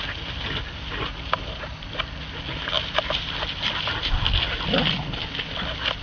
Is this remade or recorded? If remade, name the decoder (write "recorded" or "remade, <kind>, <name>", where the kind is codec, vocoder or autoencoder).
recorded